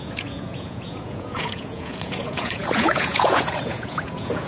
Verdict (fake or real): fake